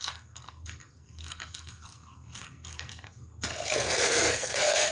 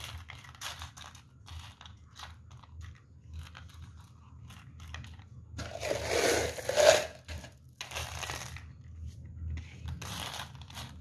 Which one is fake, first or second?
first